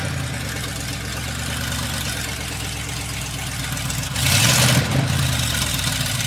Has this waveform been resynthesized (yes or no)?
no